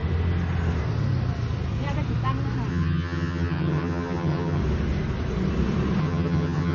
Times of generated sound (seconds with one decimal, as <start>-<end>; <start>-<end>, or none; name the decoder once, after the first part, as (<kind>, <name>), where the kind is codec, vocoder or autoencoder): 2.7-4.6 (vocoder, HiFi-GAN); 6.0-6.7